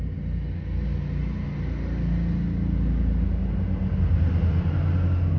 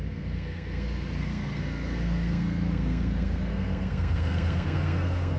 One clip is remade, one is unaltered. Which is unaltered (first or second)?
first